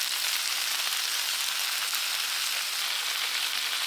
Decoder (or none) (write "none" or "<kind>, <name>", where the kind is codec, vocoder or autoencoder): none